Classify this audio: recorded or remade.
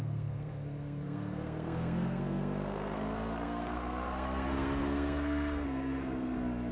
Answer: remade